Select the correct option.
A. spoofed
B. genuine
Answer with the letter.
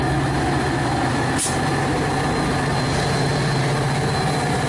B